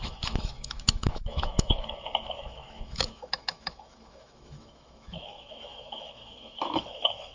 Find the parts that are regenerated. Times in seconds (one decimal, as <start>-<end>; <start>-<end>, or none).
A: 0.0-7.3